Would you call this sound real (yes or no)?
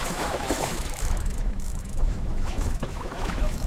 no